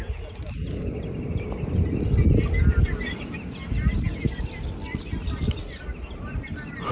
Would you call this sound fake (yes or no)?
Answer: no